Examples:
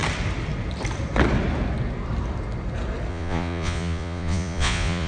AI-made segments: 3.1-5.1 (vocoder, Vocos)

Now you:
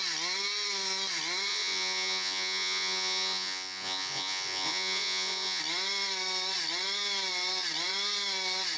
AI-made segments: 1.5-5.6 (vocoder, Vocos)

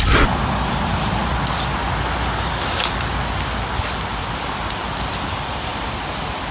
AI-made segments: 0.0-1.2 (vocoder, BigVGAN v2); 5.1-5.7

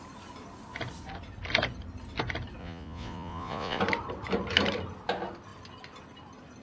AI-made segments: 2.6-3.8 (vocoder, Vocos)

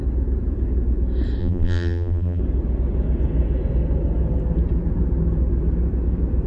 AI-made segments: 1.4-2.4 (vocoder, BigVGAN v2)

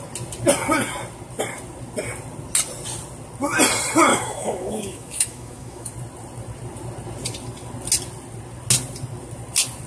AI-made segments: 4.1-5.9 (autoencoder, DAC-VAE)